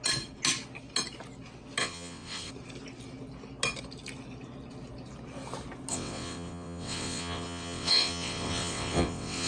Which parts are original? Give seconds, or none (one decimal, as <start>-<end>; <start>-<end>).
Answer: 0.0-1.8; 2.5-5.9